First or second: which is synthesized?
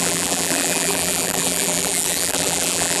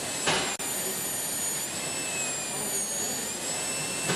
first